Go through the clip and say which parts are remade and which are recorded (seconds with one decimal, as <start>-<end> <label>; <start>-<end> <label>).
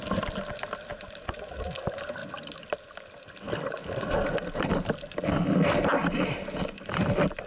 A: 0.0-7.5 recorded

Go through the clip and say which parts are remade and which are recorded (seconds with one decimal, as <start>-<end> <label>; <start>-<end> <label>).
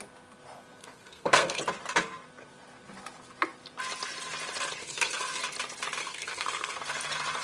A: 0.0-0.8 recorded; 0.8-1.6 remade; 1.6-4.8 recorded; 4.8-5.4 remade; 5.4-6.0 recorded; 6.0-6.8 remade; 6.8-7.4 recorded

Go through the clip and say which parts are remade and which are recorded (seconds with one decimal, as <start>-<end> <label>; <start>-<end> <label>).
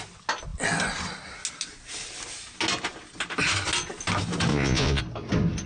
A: 0.0-4.5 recorded; 4.5-5.0 remade; 5.0-5.7 recorded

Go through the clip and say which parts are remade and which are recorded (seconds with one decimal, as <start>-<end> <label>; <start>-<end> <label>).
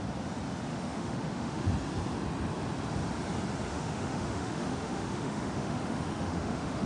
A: 0.0-0.7 recorded; 0.7-1.7 remade; 1.7-3.7 recorded; 3.7-6.9 remade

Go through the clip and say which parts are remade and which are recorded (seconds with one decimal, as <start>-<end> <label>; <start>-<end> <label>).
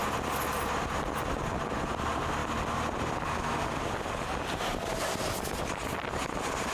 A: 0.0-6.7 recorded